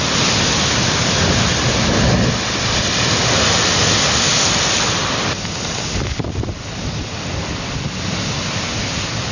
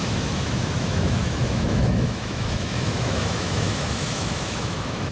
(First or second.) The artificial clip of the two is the second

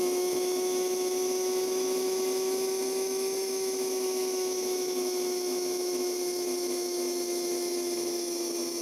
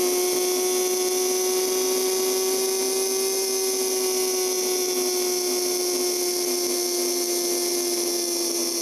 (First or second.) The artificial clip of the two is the first